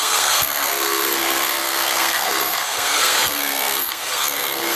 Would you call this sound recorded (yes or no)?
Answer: no